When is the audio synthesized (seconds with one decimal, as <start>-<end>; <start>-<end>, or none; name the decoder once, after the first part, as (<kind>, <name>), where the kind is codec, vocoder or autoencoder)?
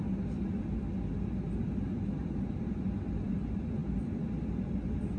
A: none